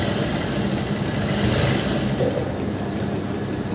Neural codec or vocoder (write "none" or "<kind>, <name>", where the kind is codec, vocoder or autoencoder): none